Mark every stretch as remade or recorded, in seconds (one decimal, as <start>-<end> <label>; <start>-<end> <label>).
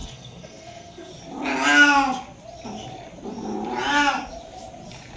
0.0-1.1 remade; 1.1-5.2 recorded